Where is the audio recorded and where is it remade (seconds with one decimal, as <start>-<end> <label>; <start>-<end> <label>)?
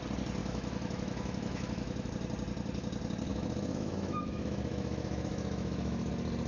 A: 0.0-0.4 recorded; 0.4-2.1 remade; 2.1-3.3 recorded; 3.3-6.1 remade; 6.1-6.5 recorded